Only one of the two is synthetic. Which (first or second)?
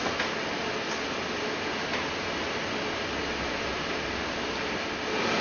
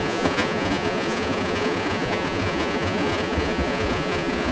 second